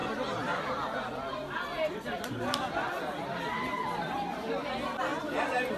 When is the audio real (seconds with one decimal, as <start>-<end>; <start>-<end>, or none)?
0.0-5.8